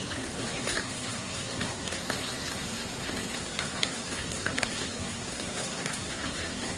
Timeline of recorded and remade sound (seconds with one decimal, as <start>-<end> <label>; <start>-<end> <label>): 0.0-6.8 remade

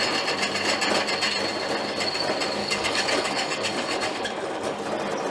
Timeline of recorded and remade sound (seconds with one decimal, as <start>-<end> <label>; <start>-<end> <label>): 0.0-2.6 recorded; 2.6-4.8 remade; 4.8-5.3 recorded

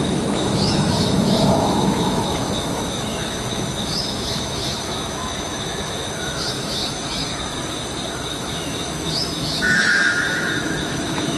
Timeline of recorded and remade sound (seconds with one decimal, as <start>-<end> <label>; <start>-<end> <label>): 0.0-6.8 remade; 6.8-8.3 recorded; 8.3-11.4 remade

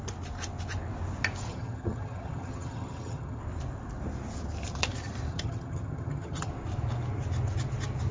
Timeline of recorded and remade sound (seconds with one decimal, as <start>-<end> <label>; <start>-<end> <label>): 0.0-1.5 recorded; 1.5-3.4 remade; 3.4-5.3 recorded; 5.3-6.5 remade; 6.5-8.1 recorded